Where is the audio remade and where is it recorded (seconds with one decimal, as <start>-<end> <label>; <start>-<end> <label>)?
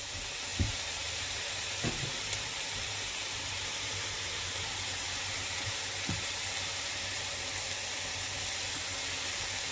0.0-0.5 recorded; 0.5-5.7 remade; 5.7-9.7 recorded